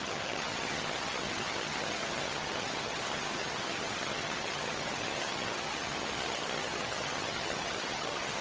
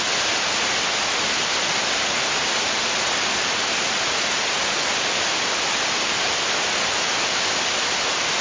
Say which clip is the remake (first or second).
first